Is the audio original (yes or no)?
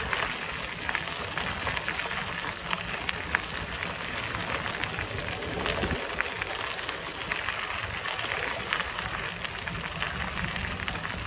yes